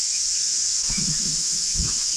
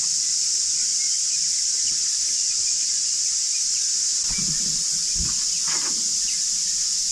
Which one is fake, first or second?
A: first